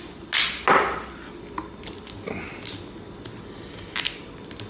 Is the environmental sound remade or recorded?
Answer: recorded